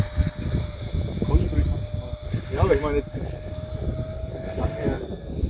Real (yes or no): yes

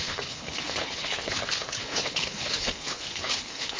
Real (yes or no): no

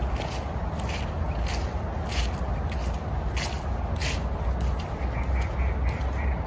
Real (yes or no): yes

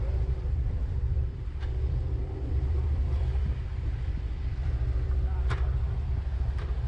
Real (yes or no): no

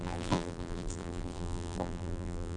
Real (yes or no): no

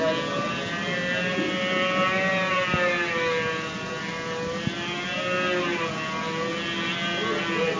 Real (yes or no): yes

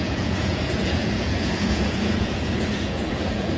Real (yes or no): no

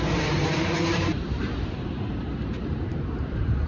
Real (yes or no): no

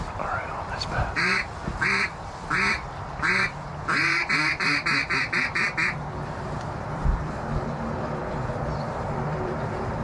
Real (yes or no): no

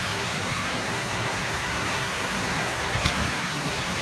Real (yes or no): no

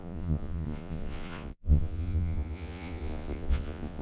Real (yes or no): no